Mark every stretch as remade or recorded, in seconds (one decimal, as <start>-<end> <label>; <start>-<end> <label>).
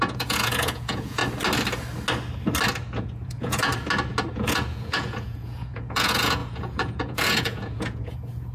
0.0-1.2 remade; 1.2-3.0 recorded; 3.0-3.7 remade; 3.7-4.3 recorded; 4.3-8.5 remade